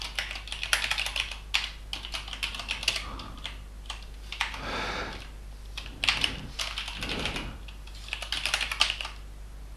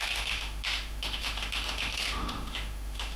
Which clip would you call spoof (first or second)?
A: second